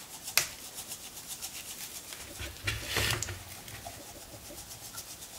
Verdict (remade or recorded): recorded